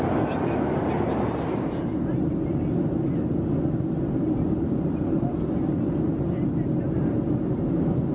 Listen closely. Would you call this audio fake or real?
real